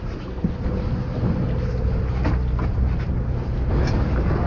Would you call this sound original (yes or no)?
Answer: yes